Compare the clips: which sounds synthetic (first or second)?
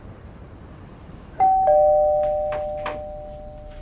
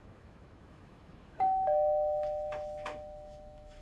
second